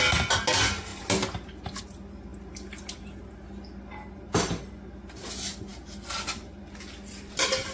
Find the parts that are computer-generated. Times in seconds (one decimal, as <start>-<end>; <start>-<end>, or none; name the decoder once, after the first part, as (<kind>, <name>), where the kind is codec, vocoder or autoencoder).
none